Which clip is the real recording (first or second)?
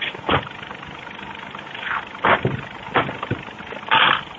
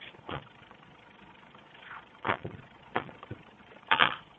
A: first